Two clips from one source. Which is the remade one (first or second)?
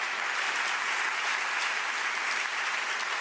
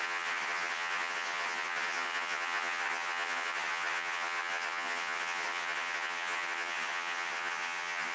second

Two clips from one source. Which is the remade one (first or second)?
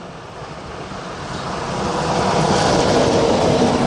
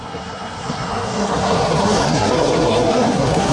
second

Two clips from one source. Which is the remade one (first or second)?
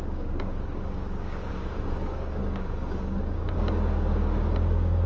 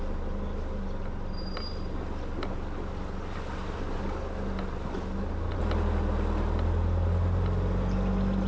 first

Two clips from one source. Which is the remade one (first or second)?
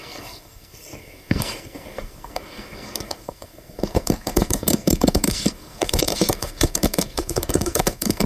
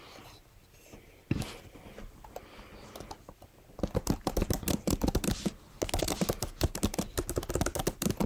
first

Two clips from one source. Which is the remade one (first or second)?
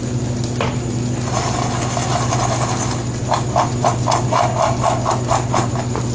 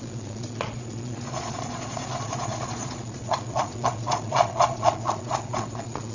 second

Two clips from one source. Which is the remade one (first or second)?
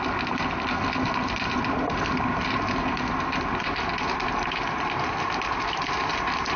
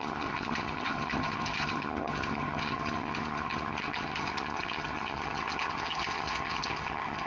second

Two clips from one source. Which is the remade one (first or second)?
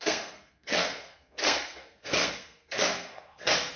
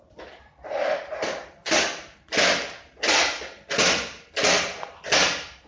first